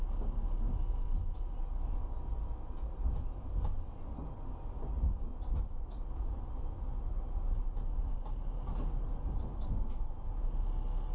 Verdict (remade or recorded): recorded